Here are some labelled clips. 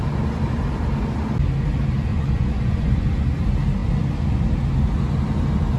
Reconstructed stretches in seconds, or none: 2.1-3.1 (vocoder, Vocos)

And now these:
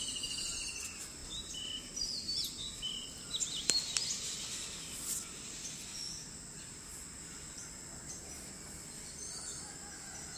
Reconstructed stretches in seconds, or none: none

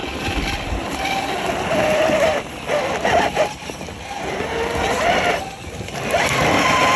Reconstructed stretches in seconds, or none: 0.0-1.3 (vocoder, BigVGAN v2); 2.5-6.3

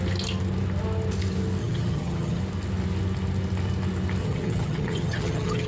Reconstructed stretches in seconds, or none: 1.6-2.4 (vocoder, HiFi-GAN); 4.2-5.7

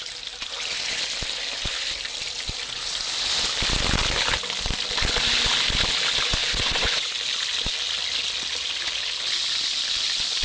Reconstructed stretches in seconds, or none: 6.4-7.1 (vocoder, Vocos)

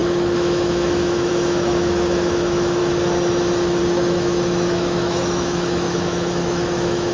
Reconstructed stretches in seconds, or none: 0.0-2.8 (autoencoder, DAC-VAE); 3.8-7.1

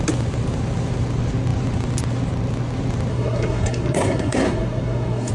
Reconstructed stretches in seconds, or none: 3.1-5.3 (codec, SNAC)

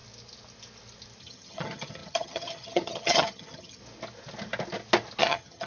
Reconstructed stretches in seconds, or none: 1.2-3.8 (vocoder, HiFi-GAN); 5.2-5.7